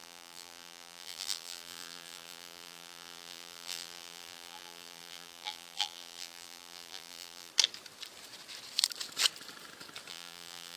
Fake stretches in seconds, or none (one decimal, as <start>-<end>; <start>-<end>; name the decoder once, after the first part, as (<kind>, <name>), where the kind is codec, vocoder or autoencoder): 0.0-7.5 (vocoder, BigVGAN v2); 10.1-10.8